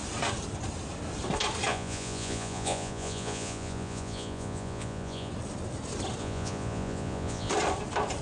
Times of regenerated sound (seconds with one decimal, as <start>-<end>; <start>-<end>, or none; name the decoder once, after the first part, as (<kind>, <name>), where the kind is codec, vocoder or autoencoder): 1.7-5.3 (vocoder, Vocos); 6.2-7.5